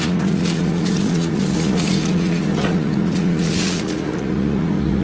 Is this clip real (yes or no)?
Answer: no